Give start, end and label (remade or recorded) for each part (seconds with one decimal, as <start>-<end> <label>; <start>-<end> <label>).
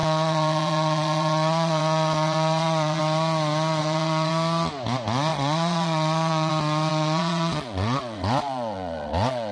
0.0-3.0 remade; 3.0-3.8 recorded; 3.8-4.3 remade; 4.3-5.3 recorded; 5.3-6.5 remade; 6.5-6.9 recorded; 6.9-9.5 remade